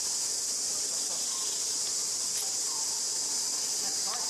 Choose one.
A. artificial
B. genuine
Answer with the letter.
B